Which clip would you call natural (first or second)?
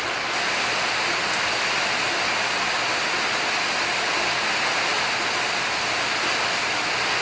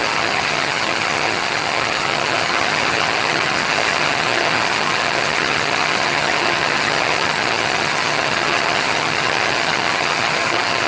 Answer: first